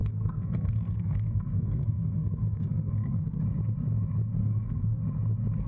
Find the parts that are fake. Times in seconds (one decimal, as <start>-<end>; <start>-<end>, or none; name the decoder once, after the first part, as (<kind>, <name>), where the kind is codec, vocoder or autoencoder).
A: 0.0-3.4 (codec, SNAC); 4.4-5.0

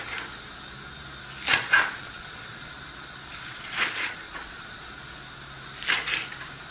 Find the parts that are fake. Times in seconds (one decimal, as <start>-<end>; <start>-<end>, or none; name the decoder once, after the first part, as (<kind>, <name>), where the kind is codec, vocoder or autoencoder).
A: 1.5-2.7 (vocoder, Vocos); 3.3-4.9